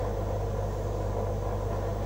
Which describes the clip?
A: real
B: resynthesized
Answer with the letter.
A